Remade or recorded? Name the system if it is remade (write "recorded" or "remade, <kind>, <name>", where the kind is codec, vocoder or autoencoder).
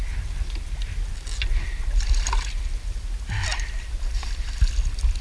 recorded